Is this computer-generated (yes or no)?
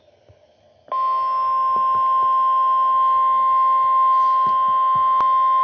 no